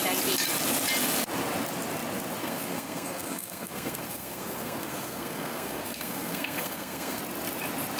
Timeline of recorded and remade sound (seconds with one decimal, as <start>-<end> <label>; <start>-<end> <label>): 0.0-2.4 recorded; 2.4-7.2 remade; 7.2-8.0 recorded